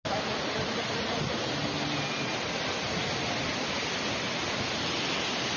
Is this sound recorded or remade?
recorded